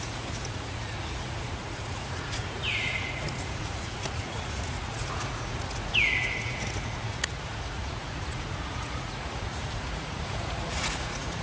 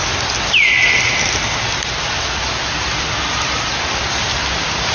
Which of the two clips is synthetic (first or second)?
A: first